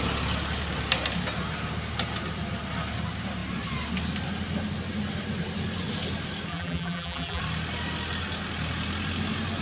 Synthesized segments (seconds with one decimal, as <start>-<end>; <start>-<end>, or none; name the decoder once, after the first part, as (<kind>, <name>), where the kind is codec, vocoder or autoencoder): 6.5-7.4 (vocoder, BigVGAN v2)